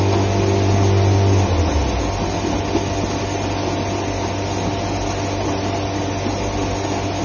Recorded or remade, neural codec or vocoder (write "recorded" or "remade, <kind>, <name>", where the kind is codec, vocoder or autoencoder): recorded